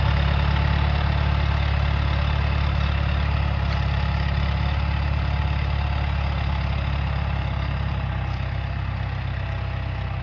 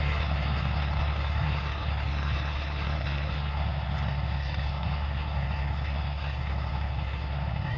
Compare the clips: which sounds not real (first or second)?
second